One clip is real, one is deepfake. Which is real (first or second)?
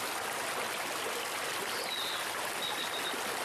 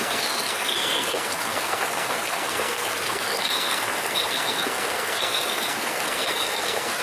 first